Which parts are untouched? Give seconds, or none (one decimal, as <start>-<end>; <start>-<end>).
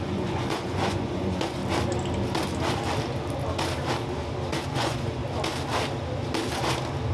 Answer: 1.6-4.7; 5.2-7.1